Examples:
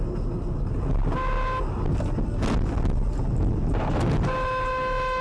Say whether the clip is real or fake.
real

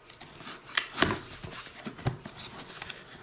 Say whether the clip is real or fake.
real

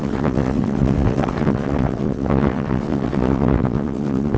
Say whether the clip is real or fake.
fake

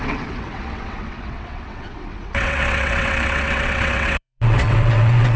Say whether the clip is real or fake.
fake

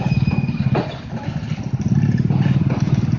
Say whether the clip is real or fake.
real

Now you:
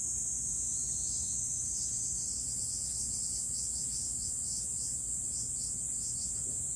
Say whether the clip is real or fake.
real